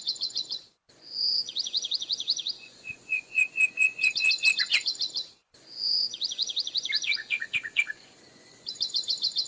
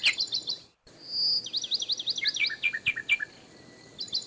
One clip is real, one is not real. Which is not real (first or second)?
first